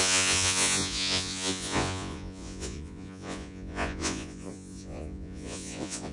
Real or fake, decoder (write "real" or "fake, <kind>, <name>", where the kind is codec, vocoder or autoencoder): fake, vocoder, Vocos